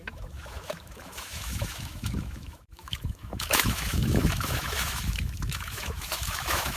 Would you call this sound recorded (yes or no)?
no